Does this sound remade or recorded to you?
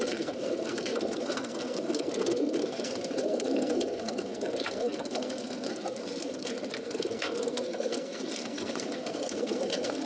remade